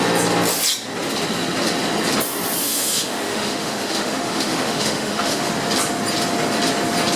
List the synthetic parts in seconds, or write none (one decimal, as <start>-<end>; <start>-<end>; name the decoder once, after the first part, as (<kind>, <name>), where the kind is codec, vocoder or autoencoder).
2.6-5.5 (autoencoder, DAC-VAE)